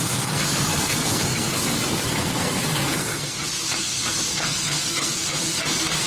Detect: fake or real fake